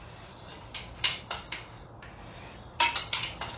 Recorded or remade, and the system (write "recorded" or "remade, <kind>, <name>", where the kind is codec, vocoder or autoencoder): recorded